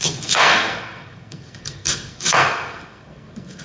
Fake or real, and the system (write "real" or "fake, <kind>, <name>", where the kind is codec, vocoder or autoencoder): fake, codec, SNAC